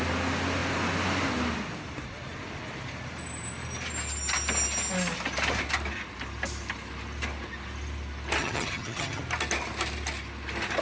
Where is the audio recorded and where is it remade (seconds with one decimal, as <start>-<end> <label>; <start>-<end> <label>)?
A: 0.0-8.4 recorded; 8.4-9.2 remade; 9.2-10.8 recorded